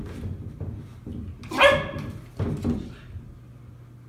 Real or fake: real